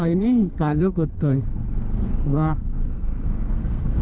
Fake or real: fake